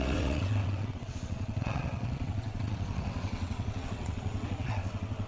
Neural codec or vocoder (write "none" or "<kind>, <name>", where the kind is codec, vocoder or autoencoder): vocoder, WaveNeXt